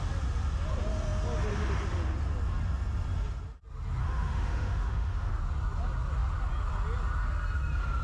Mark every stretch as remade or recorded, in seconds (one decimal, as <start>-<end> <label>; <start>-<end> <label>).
0.0-4.0 recorded; 4.0-5.3 remade; 5.3-8.0 recorded